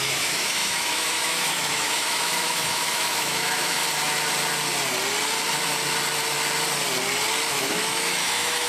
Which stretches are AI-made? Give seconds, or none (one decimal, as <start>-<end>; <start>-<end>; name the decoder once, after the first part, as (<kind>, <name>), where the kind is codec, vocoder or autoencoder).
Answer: 0.0-3.8 (autoencoder, DAC-VAE); 7.5-8.7